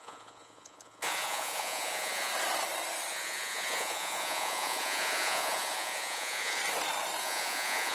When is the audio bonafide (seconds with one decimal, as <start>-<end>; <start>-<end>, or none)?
2.3-3.1; 6.6-7.2